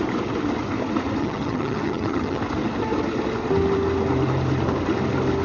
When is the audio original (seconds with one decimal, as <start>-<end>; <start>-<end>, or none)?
0.0-1.2; 2.4-5.4